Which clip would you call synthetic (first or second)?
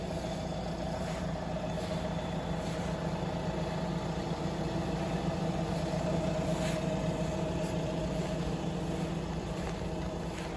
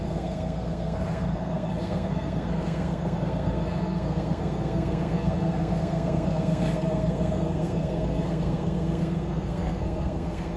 second